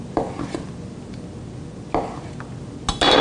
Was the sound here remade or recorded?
recorded